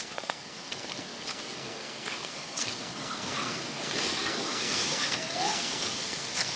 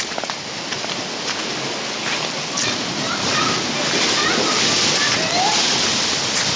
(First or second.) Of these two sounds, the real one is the second